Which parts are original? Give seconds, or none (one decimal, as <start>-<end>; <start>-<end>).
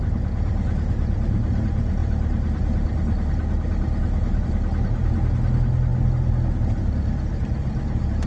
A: 0.0-8.3